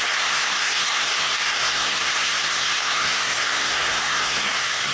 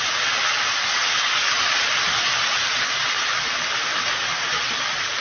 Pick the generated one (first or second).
first